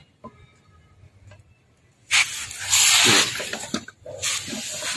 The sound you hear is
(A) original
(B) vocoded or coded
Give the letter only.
A